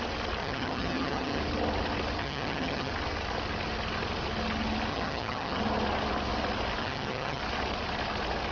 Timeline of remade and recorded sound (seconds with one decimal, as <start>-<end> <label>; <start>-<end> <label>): 0.0-0.4 recorded; 0.4-1.4 remade; 1.4-2.2 recorded; 2.2-2.9 remade; 2.9-4.9 recorded; 4.9-5.6 remade; 5.6-6.8 recorded; 6.8-7.4 remade; 7.4-8.5 recorded